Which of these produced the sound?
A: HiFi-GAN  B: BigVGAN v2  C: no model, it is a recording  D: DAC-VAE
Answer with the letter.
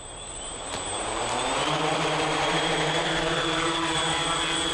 B